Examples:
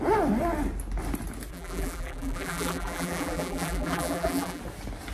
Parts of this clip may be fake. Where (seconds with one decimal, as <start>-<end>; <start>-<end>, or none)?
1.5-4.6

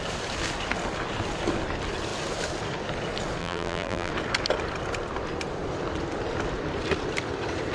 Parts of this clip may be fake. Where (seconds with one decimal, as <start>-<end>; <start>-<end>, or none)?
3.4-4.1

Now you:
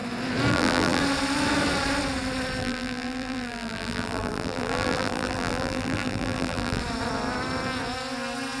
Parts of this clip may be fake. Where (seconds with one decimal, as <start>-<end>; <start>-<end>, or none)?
0.5-1.0; 2.6-6.8

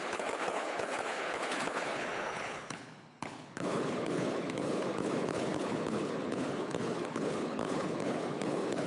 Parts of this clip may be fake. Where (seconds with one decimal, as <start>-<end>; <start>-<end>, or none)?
0.0-8.9